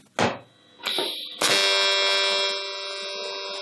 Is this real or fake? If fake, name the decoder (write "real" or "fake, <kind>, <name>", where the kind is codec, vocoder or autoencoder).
real